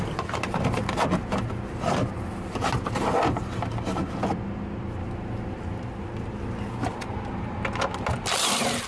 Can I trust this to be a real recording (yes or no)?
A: yes